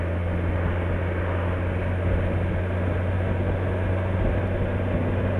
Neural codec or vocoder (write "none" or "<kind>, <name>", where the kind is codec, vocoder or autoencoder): none